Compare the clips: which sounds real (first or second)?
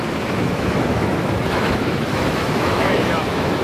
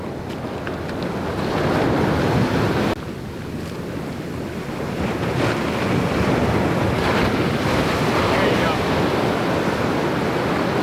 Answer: second